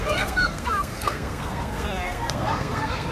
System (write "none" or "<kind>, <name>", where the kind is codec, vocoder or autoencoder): codec, SNAC